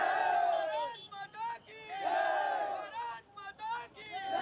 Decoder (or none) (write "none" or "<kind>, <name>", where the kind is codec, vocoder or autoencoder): none